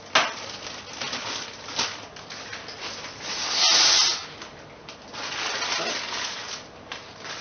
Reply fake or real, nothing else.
real